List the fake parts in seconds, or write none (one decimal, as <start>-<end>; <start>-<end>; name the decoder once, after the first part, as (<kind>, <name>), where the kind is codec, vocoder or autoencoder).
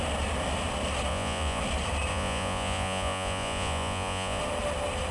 1.1-1.6 (vocoder, Vocos); 2.1-4.4